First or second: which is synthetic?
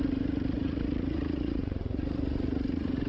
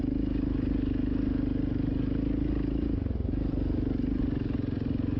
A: first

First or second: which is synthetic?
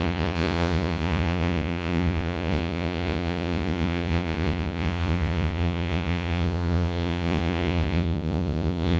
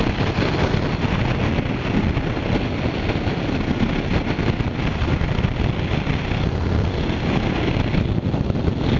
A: first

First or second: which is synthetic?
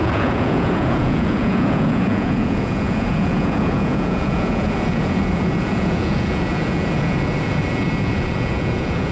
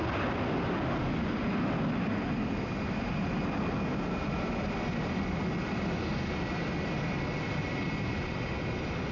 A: first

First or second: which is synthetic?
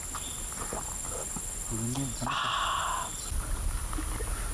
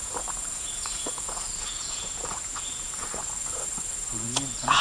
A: second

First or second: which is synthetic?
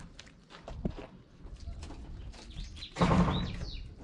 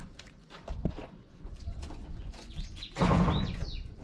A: second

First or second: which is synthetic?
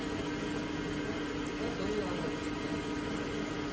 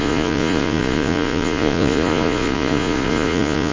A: second